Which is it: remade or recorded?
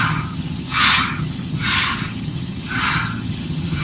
remade